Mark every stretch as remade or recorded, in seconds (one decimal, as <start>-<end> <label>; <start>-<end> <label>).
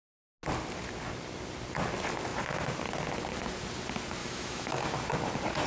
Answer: 0.0-4.2 recorded; 4.2-4.8 remade; 4.8-5.7 recorded